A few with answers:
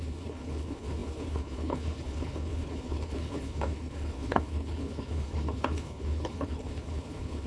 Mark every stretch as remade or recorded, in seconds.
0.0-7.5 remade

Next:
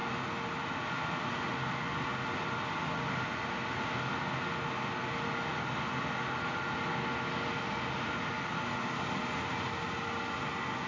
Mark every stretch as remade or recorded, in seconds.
0.0-10.9 recorded

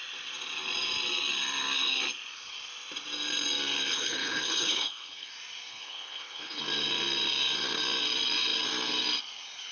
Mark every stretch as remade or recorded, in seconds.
0.0-3.9 recorded; 3.9-5.3 remade; 5.3-5.7 recorded; 5.7-6.6 remade; 6.6-9.7 recorded

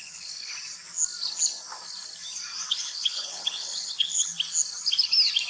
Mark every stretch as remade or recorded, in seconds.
0.0-0.5 remade; 0.5-2.7 recorded; 2.7-4.3 remade; 4.3-5.5 recorded

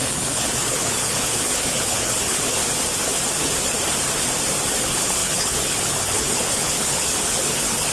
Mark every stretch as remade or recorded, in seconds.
0.0-2.6 remade; 2.6-4.8 recorded; 4.8-7.9 remade

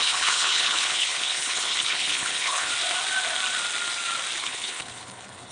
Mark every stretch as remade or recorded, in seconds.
0.0-2.7 remade; 2.7-4.4 recorded; 4.4-5.5 remade